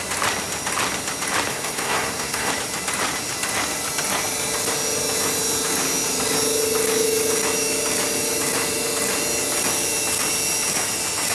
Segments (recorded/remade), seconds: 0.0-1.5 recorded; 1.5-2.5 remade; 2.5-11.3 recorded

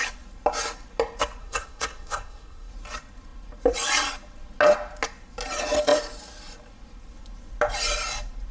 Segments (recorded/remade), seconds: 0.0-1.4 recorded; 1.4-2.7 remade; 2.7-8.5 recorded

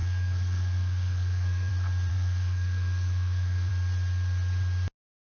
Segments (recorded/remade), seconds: 0.0-1.7 remade; 1.7-2.1 recorded; 2.1-3.7 remade; 3.7-5.4 recorded

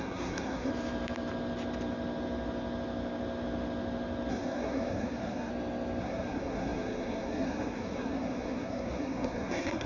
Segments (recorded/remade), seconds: 0.0-0.7 remade; 0.7-4.3 recorded; 4.3-5.5 remade; 5.5-6.0 recorded; 6.0-9.9 remade